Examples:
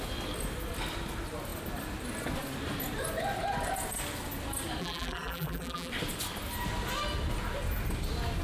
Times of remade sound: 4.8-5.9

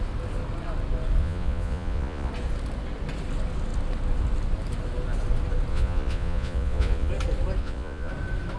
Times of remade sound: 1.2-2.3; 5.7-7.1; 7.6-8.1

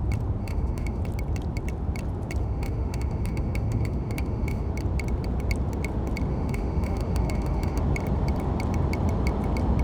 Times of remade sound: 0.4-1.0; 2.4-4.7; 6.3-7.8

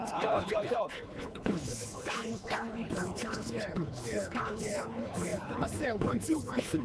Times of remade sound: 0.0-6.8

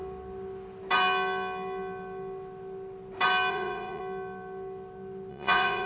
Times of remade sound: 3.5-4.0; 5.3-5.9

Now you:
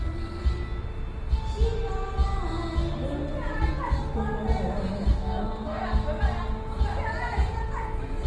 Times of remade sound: 5.1-5.8